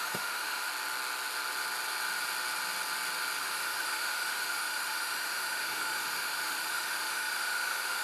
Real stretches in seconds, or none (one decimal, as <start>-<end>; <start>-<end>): 0.7-3.4